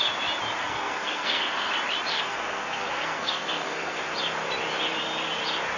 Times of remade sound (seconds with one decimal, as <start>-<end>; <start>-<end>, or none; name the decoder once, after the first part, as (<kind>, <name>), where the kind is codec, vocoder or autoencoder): 0.6-1.7 (codec, SNAC); 2.1-4.0